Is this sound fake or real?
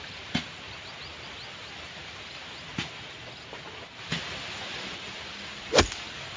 real